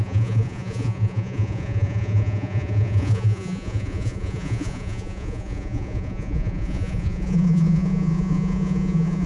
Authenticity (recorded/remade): remade